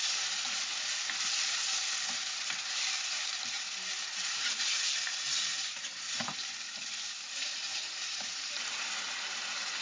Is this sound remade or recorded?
remade